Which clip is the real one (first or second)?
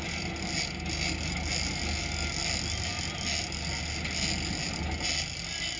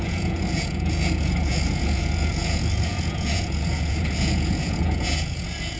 first